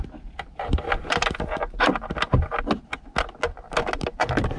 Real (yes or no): yes